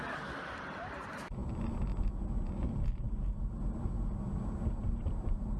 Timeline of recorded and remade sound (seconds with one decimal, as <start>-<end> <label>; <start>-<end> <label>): 0.0-1.4 remade; 1.4-4.8 recorded; 4.8-5.6 remade